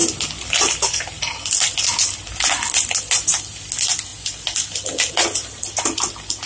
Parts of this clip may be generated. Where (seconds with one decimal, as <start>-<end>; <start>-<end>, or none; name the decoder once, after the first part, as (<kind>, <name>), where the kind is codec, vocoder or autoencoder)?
none